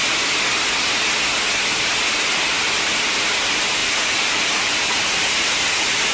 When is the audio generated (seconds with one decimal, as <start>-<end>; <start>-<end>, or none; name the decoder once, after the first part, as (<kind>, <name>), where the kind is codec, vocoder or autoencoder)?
3.8-4.7 (vocoder, BigVGAN v2)